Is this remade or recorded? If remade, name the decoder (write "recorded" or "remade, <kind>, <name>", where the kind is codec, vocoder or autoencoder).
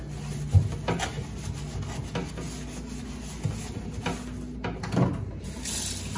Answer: recorded